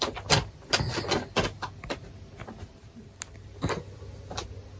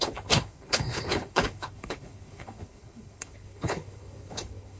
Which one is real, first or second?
first